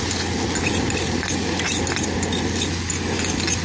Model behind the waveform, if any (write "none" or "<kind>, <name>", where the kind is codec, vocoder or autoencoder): none